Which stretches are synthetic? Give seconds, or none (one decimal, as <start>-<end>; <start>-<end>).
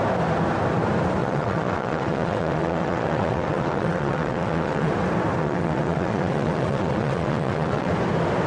1.2-4.9; 5.4-7.9